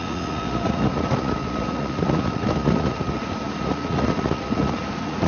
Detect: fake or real fake